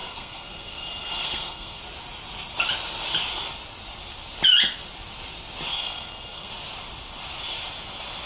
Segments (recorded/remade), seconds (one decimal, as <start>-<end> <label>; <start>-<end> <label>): 0.0-1.8 remade; 1.8-5.7 recorded; 5.7-6.5 remade; 6.5-8.3 recorded